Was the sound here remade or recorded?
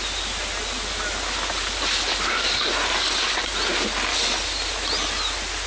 recorded